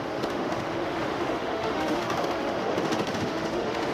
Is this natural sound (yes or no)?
no